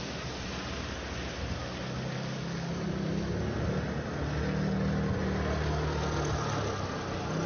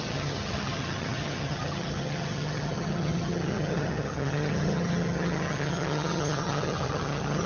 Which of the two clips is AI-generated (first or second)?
second